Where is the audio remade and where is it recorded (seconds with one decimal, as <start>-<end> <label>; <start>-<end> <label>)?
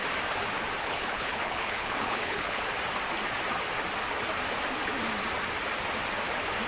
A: 0.0-0.8 recorded; 0.8-2.6 remade; 2.6-6.7 recorded